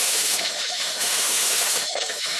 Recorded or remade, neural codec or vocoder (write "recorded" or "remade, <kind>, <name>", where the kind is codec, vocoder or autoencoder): remade, autoencoder, DAC-VAE